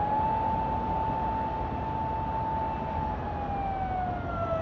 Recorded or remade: recorded